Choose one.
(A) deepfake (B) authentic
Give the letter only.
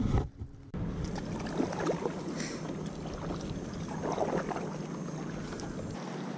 B